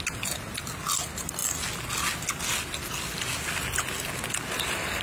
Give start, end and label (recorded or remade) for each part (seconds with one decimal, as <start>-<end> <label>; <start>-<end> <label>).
0.0-5.0 recorded

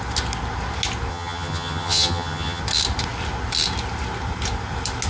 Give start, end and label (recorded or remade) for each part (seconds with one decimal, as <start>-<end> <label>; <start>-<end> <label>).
0.0-1.1 recorded; 1.1-2.6 remade; 2.6-5.1 recorded